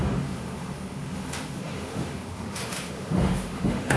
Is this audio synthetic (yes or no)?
yes